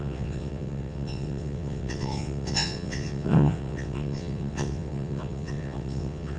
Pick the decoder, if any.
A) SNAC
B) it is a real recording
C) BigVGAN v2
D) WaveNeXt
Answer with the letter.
D